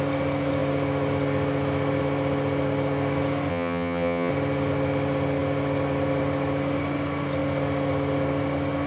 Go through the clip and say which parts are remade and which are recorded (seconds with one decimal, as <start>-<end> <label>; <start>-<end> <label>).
0.0-3.5 recorded; 3.5-4.3 remade; 4.3-8.9 recorded